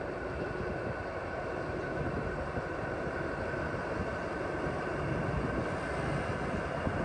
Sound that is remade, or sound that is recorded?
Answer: recorded